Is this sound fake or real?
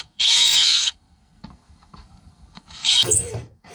fake